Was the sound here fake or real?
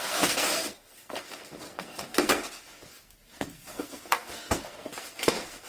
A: fake